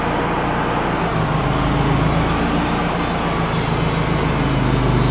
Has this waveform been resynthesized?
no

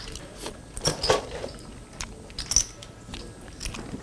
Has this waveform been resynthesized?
no